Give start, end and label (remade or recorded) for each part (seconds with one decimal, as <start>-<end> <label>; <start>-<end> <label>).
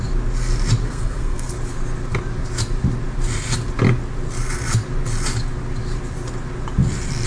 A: 0.0-0.8 recorded; 0.8-1.5 remade; 1.5-7.3 recorded